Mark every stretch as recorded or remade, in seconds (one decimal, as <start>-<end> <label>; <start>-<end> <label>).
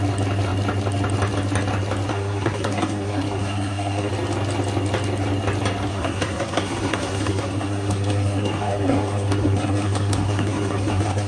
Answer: 0.0-2.1 recorded; 2.1-4.1 remade; 4.1-5.9 recorded; 5.9-11.3 remade